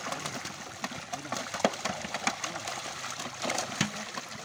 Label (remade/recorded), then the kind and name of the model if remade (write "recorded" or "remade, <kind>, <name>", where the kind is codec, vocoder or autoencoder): recorded